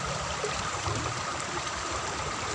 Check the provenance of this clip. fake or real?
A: fake